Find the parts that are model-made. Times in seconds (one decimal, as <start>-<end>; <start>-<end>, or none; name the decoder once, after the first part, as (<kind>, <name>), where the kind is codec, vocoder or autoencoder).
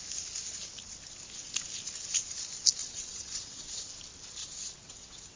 2.8-3.8 (vocoder, WaveNeXt); 4.4-5.4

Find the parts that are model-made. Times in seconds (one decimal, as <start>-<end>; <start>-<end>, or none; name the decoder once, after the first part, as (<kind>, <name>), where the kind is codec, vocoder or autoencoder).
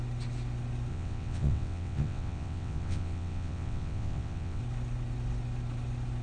0.9-4.6 (vocoder, WaveNeXt)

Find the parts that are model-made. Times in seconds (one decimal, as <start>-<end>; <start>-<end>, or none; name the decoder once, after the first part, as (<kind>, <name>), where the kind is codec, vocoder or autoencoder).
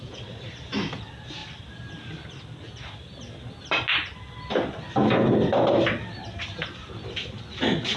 none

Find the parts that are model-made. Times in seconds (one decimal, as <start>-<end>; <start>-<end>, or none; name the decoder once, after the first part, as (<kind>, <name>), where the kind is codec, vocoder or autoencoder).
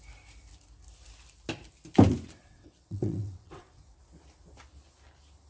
2.4-3.8 (vocoder, WaveNeXt)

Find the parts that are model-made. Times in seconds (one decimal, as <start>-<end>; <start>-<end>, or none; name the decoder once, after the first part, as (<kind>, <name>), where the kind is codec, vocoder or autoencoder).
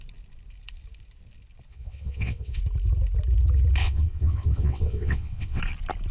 1.7-2.6 (vocoder, WaveNeXt); 3.8-5.6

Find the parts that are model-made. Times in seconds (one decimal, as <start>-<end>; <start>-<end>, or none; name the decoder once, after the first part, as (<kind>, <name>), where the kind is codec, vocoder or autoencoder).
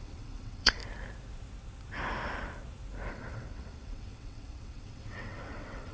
0.0-0.8 (vocoder, WaveNeXt); 3.1-5.9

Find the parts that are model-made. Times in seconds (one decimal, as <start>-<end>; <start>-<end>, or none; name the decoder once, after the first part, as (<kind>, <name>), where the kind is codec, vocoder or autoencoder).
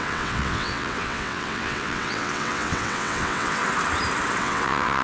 0.0-3.6 (vocoder, WaveNeXt); 4.4-5.0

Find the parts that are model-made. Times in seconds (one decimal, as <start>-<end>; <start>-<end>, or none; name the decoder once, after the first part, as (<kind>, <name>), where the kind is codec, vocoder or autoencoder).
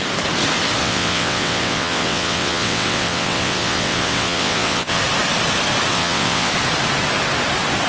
0.8-5.0 (vocoder, WaveNeXt); 5.9-6.5